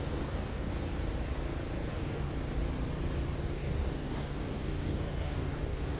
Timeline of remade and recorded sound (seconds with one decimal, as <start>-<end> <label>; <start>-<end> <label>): 0.0-0.7 remade; 0.7-1.9 recorded; 1.9-2.3 remade; 2.3-3.4 recorded; 3.4-6.0 remade